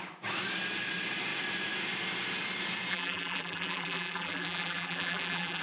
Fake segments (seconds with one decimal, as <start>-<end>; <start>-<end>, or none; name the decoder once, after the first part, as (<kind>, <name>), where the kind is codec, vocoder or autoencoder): 2.9-5.6 (vocoder, BigVGAN v2)